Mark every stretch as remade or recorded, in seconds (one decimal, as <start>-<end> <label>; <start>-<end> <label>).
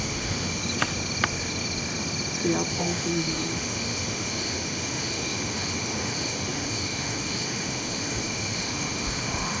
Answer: 0.0-0.6 remade; 0.6-2.7 recorded; 2.7-9.6 remade